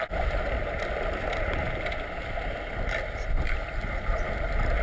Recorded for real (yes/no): yes